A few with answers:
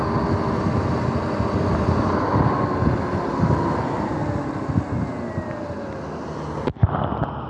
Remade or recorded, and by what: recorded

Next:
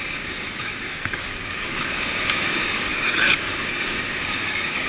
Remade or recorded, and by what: remade, codec, DAC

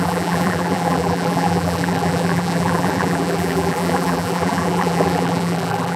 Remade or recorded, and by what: remade, vocoder, BigVGAN v2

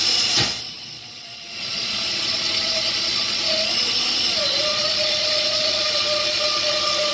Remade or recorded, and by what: remade, vocoder, Vocos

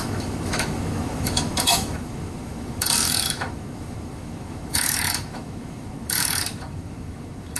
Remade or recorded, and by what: remade, autoencoder, DAC-VAE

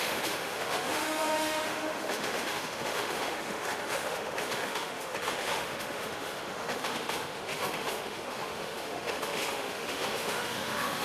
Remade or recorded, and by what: remade, autoencoder, DAC-VAE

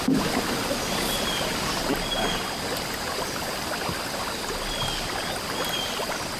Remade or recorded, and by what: recorded